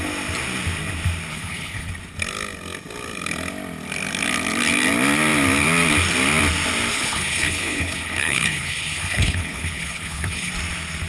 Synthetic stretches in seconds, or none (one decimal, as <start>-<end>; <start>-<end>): 1.3-1.9; 6.9-10.5

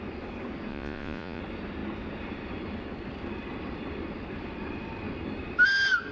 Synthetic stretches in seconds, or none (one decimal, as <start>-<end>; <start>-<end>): 0.7-1.4

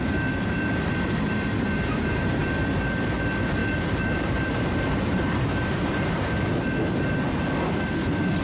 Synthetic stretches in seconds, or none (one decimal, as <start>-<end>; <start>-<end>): 0.0-2.4; 3.6-6.5

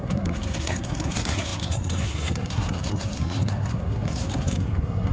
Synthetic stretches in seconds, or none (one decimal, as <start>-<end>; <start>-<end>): 0.0-5.1

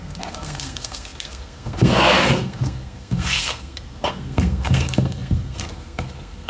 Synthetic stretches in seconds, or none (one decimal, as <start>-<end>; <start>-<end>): 0.0-6.5

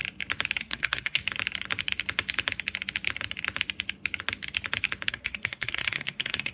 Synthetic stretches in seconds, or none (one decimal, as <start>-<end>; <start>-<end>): 0.6-1.2; 5.1-6.5